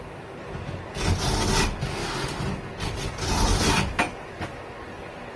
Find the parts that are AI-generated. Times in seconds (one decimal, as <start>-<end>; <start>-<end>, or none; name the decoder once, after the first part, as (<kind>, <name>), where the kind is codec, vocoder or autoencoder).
none